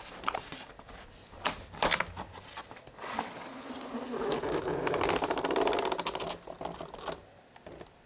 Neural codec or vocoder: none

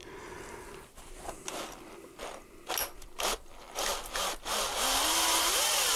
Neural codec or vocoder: none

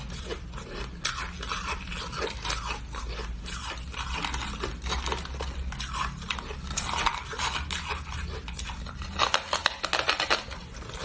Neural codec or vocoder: none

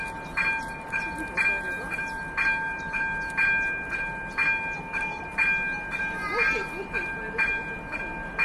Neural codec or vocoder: none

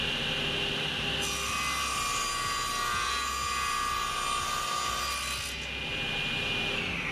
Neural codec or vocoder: none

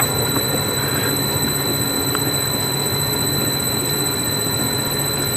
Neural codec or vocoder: none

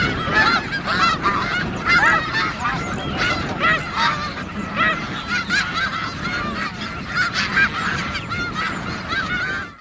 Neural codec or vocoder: none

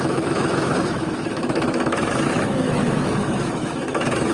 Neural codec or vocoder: autoencoder, DAC-VAE